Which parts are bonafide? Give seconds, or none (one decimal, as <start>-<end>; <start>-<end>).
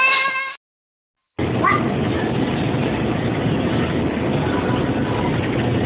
0.0-5.9